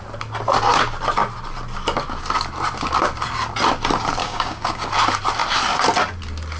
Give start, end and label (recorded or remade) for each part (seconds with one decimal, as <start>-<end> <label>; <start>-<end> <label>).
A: 0.0-4.2 recorded; 4.2-4.9 remade; 4.9-6.6 recorded